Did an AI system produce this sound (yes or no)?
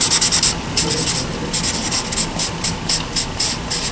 no